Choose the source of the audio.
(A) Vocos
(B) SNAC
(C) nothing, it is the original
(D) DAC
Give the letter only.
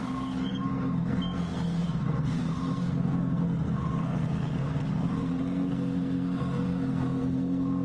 B